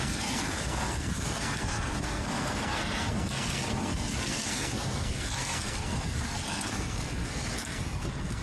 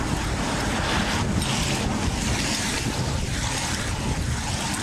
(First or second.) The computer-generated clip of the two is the first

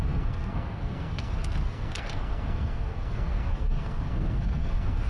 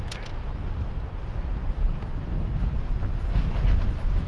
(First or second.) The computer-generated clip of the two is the first